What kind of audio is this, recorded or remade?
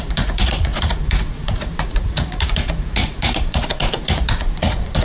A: remade